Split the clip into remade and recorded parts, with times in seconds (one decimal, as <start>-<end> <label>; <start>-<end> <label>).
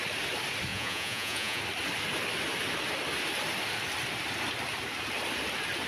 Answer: 0.0-0.7 recorded; 0.7-1.6 remade; 1.6-5.9 recorded